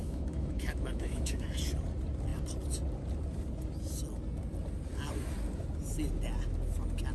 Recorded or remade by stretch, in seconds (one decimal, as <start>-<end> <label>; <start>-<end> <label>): 0.0-1.6 remade; 1.6-7.1 recorded